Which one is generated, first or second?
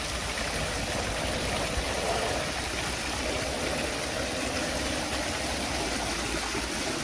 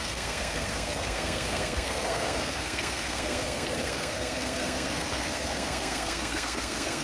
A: second